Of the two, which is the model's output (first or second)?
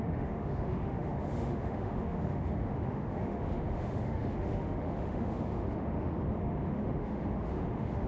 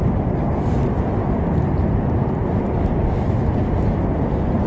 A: first